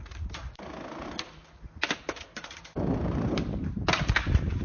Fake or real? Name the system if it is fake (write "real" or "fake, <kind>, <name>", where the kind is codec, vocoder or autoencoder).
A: real